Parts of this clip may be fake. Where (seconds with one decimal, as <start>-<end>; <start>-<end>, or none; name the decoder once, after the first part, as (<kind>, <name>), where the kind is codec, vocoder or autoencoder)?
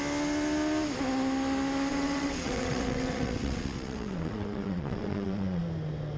1.9-5.6 (vocoder, WaveNeXt)